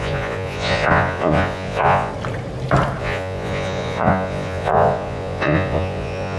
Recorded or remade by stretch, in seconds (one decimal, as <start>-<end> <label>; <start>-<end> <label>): 0.0-2.1 remade; 2.1-3.0 recorded; 3.0-6.4 remade